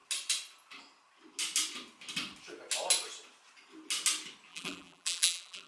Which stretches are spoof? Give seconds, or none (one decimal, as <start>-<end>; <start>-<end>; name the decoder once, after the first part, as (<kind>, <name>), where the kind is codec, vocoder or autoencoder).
4.5-5.7 (vocoder, BigVGAN v2)